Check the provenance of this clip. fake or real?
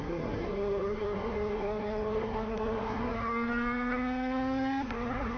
fake